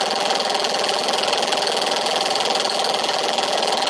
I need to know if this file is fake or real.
fake